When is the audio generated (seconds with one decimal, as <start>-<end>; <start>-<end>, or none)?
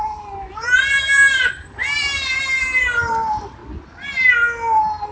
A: 0.0-1.8; 2.3-3.6